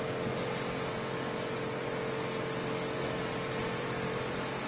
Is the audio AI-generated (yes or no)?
no